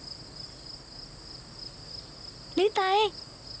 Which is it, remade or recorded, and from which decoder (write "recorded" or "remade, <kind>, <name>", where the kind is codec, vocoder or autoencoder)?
recorded